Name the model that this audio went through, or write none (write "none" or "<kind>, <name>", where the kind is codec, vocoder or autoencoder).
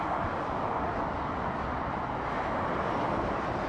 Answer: none